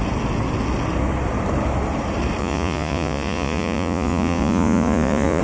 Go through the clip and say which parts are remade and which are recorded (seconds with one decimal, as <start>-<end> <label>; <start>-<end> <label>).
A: 0.0-2.4 recorded; 2.4-5.4 remade